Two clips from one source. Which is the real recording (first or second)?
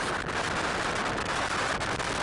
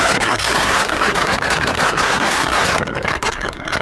first